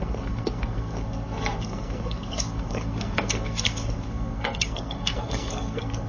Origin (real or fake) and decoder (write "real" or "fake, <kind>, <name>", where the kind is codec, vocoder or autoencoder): fake, codec, SNAC